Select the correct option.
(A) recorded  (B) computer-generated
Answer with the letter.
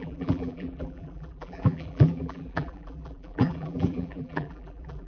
B